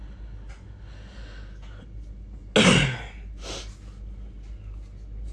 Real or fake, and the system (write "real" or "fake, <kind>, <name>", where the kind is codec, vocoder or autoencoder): real